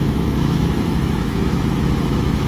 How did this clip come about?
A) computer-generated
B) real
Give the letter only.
A